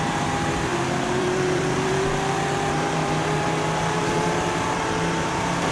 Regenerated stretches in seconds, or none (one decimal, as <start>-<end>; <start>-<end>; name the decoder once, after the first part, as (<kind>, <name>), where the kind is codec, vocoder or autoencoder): 0.0-5.7 (vocoder, BigVGAN v2)